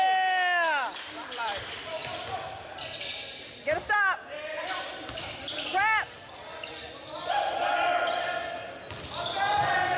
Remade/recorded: recorded